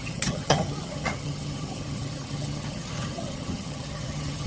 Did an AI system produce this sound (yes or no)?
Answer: yes